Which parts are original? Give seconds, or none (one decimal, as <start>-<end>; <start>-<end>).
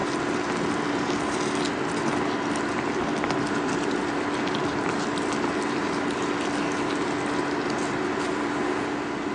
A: 0.0-9.3